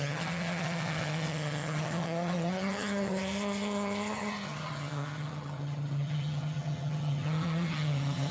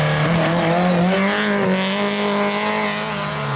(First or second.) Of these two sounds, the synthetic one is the first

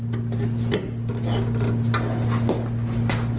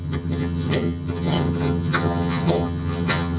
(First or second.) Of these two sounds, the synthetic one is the second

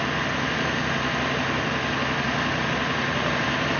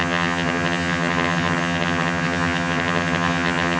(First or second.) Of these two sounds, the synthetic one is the second